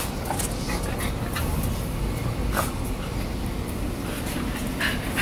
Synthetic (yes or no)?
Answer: no